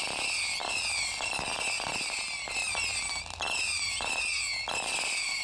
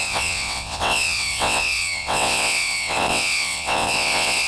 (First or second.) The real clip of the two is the first